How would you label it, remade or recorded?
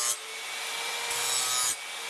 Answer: recorded